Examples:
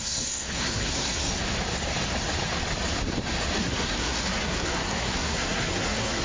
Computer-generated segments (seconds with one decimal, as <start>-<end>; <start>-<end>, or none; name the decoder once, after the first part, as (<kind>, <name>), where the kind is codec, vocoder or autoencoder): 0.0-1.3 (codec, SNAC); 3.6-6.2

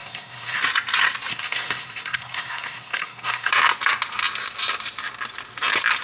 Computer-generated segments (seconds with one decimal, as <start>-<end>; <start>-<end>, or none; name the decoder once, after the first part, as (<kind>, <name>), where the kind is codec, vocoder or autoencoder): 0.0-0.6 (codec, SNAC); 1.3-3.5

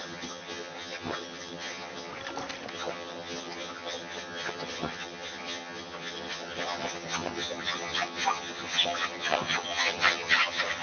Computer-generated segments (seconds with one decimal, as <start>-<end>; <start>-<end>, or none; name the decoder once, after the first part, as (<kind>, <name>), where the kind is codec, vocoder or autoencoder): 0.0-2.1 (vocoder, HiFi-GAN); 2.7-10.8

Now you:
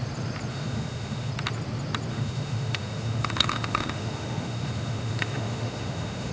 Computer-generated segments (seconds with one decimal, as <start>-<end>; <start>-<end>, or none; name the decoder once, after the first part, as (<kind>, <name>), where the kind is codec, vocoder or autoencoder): 0.5-1.3 (autoencoder, DAC-VAE); 2.1-6.3

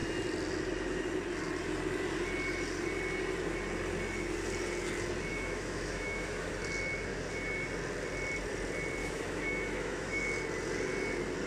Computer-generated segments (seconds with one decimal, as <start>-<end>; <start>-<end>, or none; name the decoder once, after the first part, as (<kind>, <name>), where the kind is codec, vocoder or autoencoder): 5.3-6.5 (autoencoder, DAC-VAE); 9.0-10.2

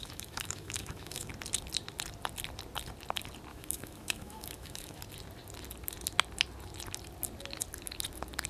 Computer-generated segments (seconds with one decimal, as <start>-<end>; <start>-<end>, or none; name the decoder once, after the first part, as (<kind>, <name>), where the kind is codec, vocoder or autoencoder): 0.0-1.3 (autoencoder, DAC-VAE); 3.5-5.0

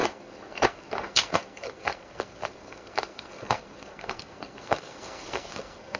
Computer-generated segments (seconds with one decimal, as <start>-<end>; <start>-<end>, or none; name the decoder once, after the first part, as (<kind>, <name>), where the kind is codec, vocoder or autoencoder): 0.0-6.0 (codec, SNAC)